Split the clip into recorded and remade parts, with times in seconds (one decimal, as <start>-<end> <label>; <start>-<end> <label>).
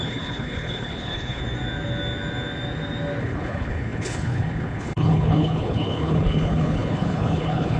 0.0-1.4 remade; 1.4-3.2 recorded; 3.2-7.8 remade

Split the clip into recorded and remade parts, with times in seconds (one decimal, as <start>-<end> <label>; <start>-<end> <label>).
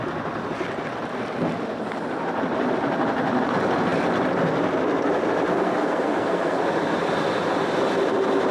0.0-5.5 recorded; 5.5-6.6 remade; 6.6-8.5 recorded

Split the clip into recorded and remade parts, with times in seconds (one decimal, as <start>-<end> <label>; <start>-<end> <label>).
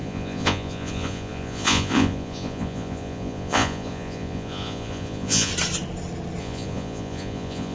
0.0-5.5 remade; 5.5-6.4 recorded; 6.4-7.7 remade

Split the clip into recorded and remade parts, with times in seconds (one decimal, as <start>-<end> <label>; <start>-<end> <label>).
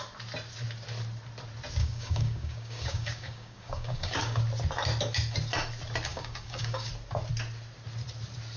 0.0-1.8 recorded; 1.8-4.4 remade; 4.4-6.1 recorded; 6.1-6.9 remade; 6.9-8.6 recorded